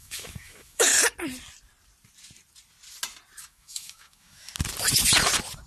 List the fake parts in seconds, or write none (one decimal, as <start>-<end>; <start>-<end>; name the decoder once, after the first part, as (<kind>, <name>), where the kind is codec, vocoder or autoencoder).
0.0-0.9 (autoencoder, DAC-VAE); 3.4-4.5